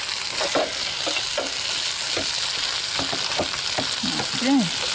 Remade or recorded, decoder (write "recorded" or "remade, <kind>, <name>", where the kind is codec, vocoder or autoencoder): recorded